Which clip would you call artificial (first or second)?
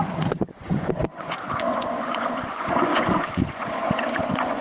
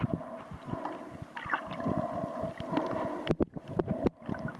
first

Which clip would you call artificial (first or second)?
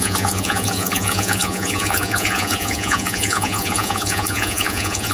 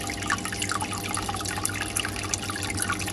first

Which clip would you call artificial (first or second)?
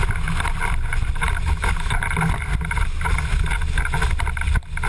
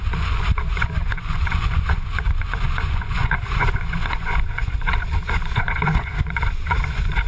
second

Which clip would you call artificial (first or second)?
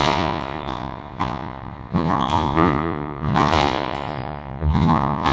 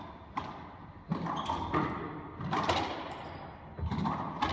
first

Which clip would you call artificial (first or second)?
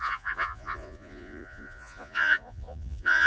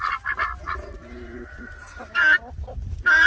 first